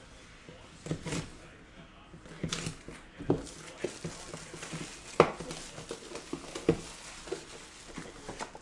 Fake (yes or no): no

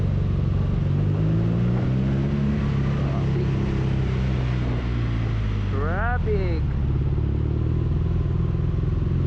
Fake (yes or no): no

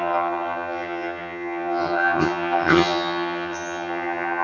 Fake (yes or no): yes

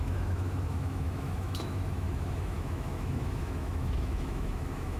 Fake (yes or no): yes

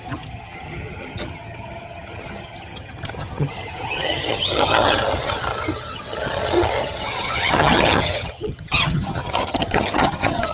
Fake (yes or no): yes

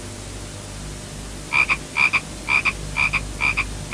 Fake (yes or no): no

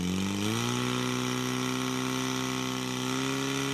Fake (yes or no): no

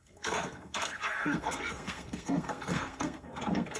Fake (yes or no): yes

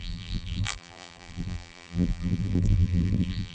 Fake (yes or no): yes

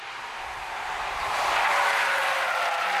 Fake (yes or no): no